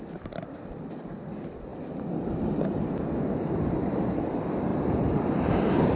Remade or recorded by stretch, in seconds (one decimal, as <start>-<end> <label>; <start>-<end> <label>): 0.0-4.7 recorded; 4.7-5.6 remade; 5.6-6.0 recorded